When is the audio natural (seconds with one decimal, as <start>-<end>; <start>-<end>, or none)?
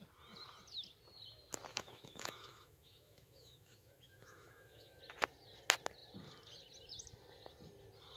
0.0-1.7; 5.0-8.2